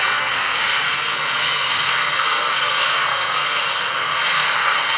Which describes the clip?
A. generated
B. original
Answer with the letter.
A